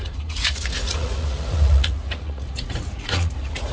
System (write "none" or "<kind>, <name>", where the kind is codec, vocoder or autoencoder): vocoder, Vocos